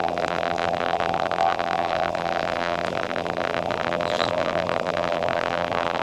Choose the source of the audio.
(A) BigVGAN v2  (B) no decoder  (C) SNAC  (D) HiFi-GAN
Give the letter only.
A